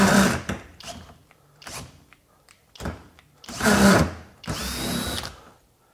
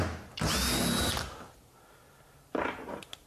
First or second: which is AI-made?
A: first